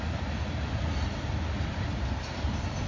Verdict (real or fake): real